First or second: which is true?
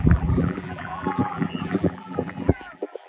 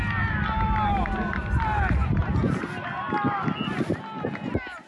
second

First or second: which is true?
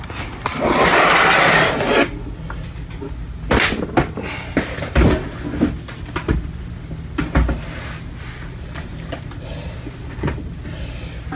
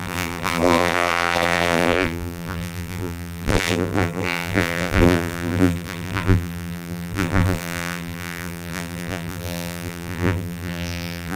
first